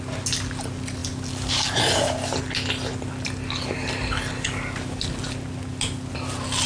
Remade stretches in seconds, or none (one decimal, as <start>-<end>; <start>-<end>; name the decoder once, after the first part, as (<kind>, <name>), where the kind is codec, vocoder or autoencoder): none